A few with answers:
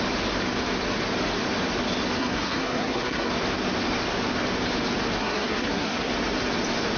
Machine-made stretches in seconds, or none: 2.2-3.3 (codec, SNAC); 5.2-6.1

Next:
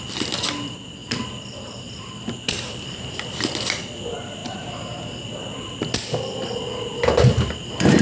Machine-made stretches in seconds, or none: 0.0-4.4 (vocoder, BigVGAN v2); 7.5-8.0

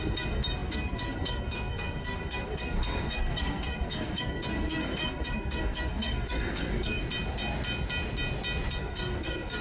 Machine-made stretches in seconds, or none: 0.0-7.0 (codec, SNAC); 8.8-9.6